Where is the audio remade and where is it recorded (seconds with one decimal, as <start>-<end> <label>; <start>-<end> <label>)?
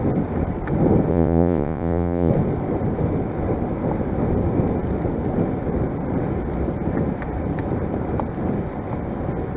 0.0-1.1 recorded; 1.1-2.3 remade; 2.3-9.6 recorded